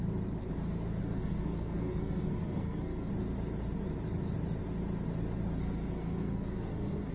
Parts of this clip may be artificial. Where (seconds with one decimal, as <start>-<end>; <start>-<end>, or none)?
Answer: 1.0-3.1; 5.6-7.1